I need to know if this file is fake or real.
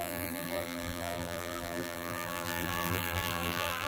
fake